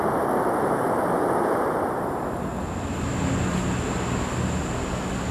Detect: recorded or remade recorded